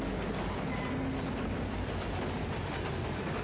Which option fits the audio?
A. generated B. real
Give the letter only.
B